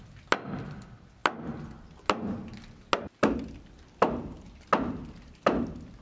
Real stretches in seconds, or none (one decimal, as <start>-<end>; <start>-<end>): 0.0-6.0